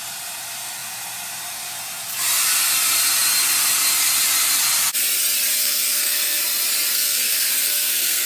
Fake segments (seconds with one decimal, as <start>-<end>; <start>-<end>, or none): 5.6-6.4; 6.9-8.3